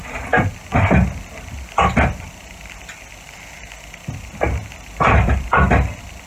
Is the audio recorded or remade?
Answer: recorded